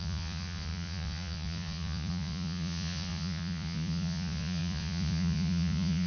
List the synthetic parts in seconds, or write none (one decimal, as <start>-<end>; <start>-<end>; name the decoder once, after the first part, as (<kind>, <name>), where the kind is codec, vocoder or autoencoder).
0.0-6.1 (vocoder, Vocos)

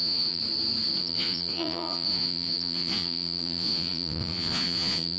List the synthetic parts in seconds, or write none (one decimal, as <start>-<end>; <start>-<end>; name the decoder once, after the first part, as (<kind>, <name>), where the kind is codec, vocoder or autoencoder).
0.0-0.4 (vocoder, Vocos); 1.0-5.2

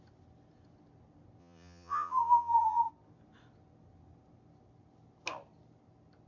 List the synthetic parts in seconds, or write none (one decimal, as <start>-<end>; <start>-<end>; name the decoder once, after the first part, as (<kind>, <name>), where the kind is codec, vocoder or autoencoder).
1.4-2.9 (vocoder, Vocos)

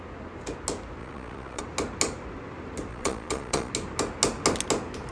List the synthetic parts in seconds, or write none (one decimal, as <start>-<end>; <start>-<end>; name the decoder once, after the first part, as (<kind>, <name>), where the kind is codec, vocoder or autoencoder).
1.0-1.6 (vocoder, Vocos); 2.9-3.7

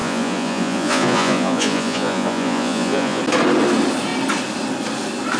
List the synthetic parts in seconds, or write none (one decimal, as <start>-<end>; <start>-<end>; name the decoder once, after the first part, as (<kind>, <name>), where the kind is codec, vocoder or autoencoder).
0.0-3.2 (vocoder, Vocos)

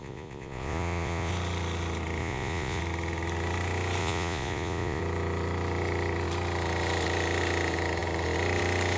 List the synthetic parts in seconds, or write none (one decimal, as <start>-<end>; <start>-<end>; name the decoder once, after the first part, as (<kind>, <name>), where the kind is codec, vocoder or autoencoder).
0.0-1.3 (vocoder, Vocos); 2.2-2.8; 4.0-5.0

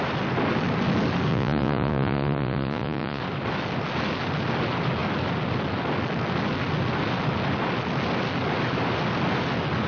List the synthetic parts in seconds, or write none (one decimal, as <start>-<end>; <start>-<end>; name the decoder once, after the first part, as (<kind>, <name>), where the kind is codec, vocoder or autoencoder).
1.3-3.2 (vocoder, Vocos)